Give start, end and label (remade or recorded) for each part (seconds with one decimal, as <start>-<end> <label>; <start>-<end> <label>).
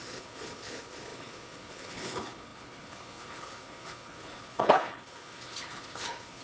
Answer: 0.0-6.4 remade